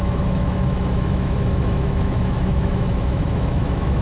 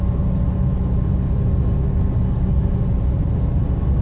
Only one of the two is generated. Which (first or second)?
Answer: first